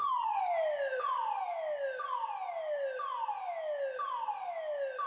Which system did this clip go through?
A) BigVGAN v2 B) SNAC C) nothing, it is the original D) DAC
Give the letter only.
C